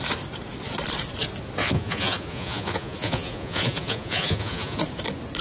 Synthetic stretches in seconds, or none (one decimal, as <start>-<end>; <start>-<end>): 1.6-4.8